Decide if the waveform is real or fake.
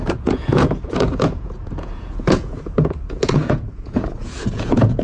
fake